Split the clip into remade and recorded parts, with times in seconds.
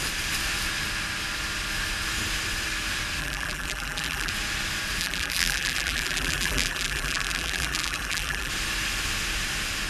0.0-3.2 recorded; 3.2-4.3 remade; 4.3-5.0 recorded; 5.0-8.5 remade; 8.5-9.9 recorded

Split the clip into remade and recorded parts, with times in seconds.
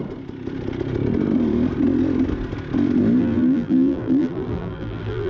0.0-3.2 recorded; 3.2-5.3 remade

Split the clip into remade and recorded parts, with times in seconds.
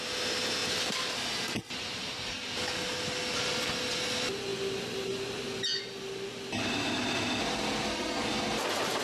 0.0-9.0 recorded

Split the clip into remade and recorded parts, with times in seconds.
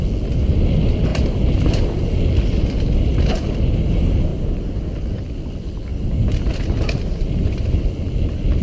0.0-8.6 recorded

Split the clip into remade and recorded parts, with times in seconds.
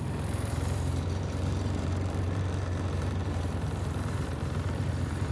0.0-5.3 remade